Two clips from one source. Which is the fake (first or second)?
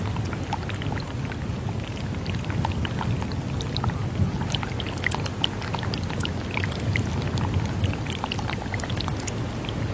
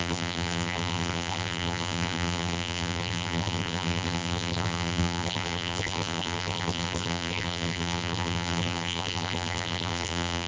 second